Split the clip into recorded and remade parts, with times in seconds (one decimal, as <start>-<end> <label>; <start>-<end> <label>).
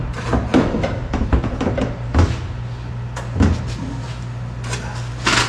0.0-0.5 recorded; 0.5-2.3 remade; 2.3-5.5 recorded